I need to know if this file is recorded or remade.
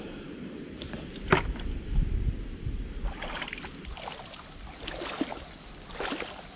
recorded